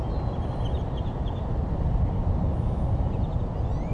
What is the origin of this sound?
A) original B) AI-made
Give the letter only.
B